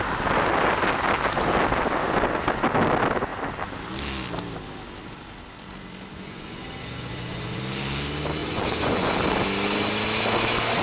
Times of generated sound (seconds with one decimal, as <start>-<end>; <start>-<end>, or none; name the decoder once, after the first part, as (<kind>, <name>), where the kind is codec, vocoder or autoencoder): 6.1-7.6 (vocoder, Vocos); 8.4-9.1